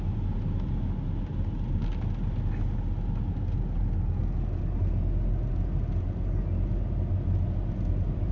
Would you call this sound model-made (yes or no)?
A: no